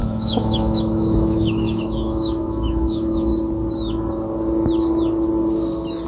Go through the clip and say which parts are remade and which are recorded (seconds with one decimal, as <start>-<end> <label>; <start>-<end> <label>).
0.0-3.3 remade; 3.3-6.1 recorded